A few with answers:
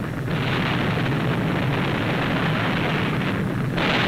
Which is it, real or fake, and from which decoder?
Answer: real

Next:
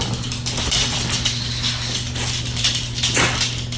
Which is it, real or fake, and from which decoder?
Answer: real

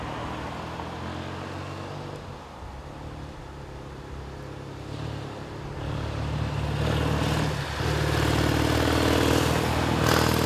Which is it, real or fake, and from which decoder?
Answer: real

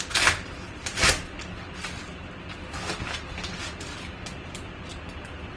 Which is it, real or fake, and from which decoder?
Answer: real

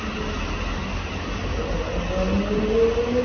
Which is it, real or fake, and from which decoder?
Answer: real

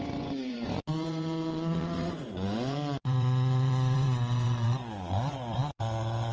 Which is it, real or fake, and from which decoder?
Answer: fake, vocoder, Vocos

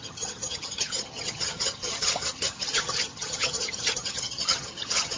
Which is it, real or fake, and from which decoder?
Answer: fake, vocoder, HiFi-GAN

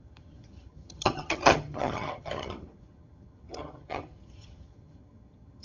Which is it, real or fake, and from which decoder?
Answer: fake, vocoder, HiFi-GAN